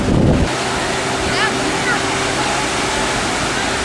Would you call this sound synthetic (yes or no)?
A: no